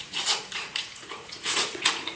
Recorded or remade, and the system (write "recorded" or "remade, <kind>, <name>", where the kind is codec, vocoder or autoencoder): remade, vocoder, Vocos